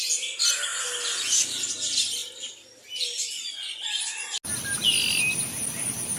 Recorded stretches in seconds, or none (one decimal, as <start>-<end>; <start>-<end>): 0.0-6.2